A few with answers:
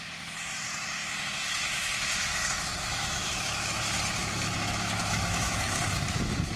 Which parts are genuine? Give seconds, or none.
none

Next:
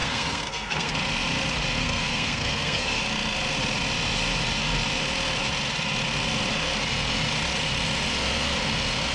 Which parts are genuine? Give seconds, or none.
0.9-1.8; 3.0-9.1

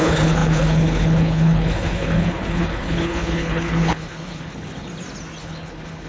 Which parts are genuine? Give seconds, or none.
4.9-5.4

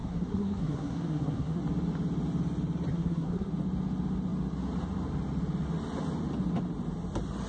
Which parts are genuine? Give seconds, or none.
1.6-2.9; 3.5-7.5

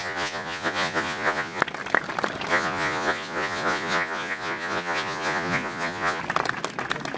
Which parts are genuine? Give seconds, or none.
1.6-2.5; 6.2-7.2

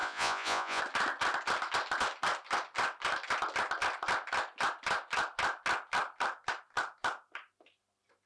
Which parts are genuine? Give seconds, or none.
0.8-8.3

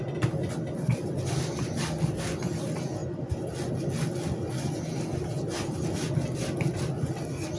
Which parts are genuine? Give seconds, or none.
0.0-7.6